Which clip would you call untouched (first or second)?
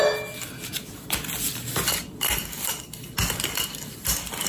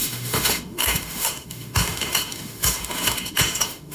first